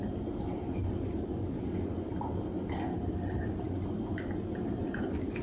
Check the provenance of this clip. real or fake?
real